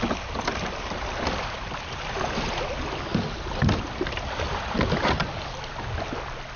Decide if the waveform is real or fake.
real